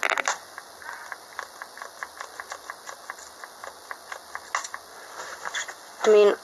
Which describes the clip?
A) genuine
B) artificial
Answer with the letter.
A